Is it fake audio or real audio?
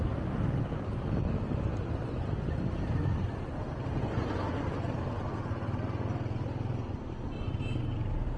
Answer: real